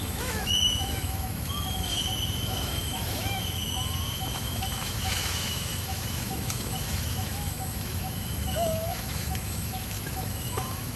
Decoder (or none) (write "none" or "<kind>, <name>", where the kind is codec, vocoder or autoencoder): autoencoder, DAC-VAE